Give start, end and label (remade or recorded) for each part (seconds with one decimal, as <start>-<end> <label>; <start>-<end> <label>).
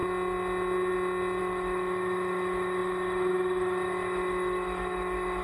0.0-1.4 recorded; 1.4-5.4 remade